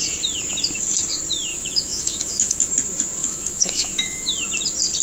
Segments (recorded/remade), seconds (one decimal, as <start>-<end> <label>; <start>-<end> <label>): 0.0-1.5 recorded; 1.5-2.7 remade; 2.7-3.2 recorded; 3.2-4.3 remade; 4.3-5.0 recorded